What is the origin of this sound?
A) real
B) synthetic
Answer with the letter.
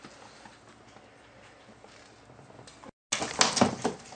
A